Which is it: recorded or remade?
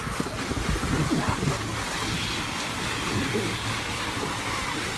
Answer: recorded